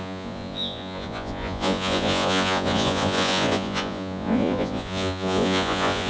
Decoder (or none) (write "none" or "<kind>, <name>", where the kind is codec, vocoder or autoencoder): vocoder, Vocos